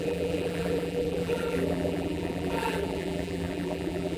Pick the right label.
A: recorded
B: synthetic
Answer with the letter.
B